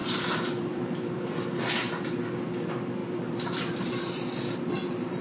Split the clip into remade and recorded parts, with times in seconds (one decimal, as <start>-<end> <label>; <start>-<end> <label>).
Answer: 0.0-1.4 remade; 1.4-3.0 recorded; 3.0-4.7 remade; 4.7-5.2 recorded